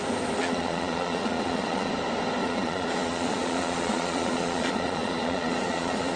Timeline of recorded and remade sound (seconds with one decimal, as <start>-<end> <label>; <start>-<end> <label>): 0.0-0.4 recorded; 0.4-1.9 remade; 1.9-2.4 recorded; 2.4-6.2 remade